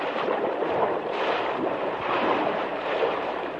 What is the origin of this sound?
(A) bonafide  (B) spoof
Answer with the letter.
B